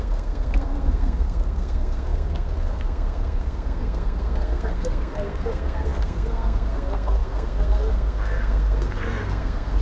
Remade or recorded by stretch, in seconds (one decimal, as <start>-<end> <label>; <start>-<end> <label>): 0.0-9.8 remade